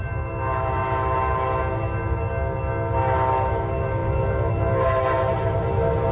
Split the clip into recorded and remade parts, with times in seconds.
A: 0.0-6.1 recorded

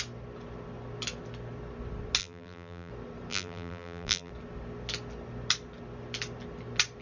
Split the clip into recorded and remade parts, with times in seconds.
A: 0.0-2.2 recorded; 2.2-2.9 remade; 2.9-3.3 recorded; 3.3-4.3 remade; 4.3-7.0 recorded

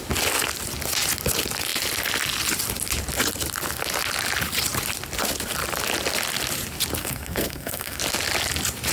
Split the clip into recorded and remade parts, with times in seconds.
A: 0.0-7.0 recorded; 7.0-8.0 remade; 8.0-8.9 recorded

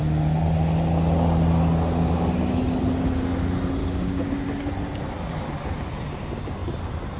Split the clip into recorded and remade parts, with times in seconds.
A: 0.0-3.8 recorded; 3.8-4.3 remade; 4.3-7.2 recorded

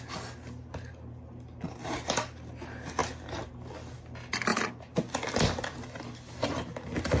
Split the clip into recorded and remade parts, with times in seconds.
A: 0.0-7.2 recorded

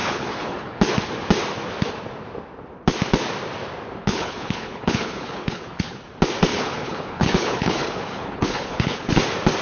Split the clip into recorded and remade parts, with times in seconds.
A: 0.0-0.8 remade; 0.8-4.0 recorded; 4.0-6.0 remade; 6.0-6.5 recorded; 6.5-9.1 remade; 9.1-9.6 recorded

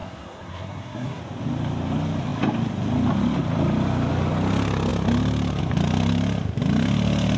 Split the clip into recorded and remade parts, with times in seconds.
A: 0.0-1.2 remade; 1.2-7.4 recorded